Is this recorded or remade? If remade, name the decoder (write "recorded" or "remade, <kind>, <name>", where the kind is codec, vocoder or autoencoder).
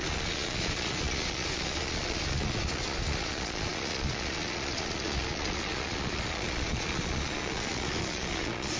remade, vocoder, Vocos